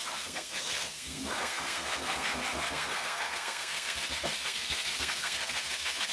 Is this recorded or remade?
remade